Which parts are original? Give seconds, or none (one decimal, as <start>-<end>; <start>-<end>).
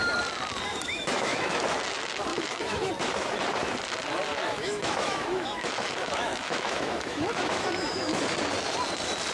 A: 0.0-0.7; 1.5-2.3; 2.9-4.3; 8.2-9.3